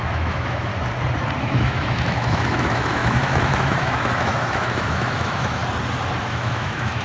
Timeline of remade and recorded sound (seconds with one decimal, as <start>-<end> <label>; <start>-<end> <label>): 0.0-0.7 remade; 0.7-1.4 recorded; 1.4-5.6 remade; 5.6-6.2 recorded; 6.2-7.0 remade